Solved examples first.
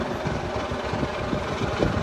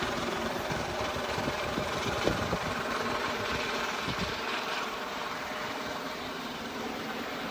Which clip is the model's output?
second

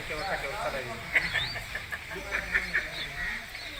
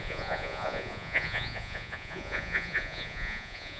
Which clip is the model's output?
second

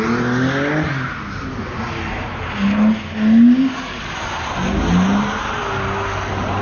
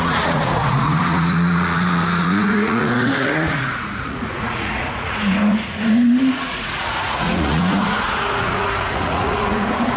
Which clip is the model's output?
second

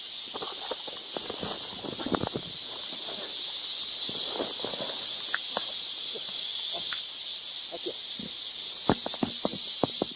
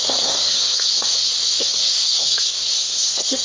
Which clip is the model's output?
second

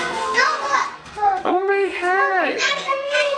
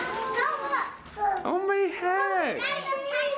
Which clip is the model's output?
first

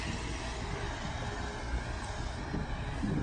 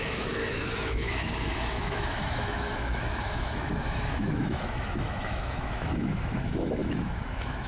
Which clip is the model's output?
second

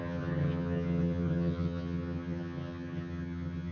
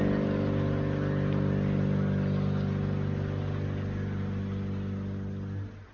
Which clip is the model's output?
first